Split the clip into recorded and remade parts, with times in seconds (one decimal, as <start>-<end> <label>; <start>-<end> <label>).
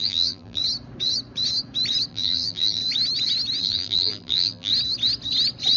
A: 0.0-0.6 remade; 0.6-2.1 recorded; 2.1-2.8 remade; 2.8-3.6 recorded; 3.6-4.7 remade; 4.7-5.8 recorded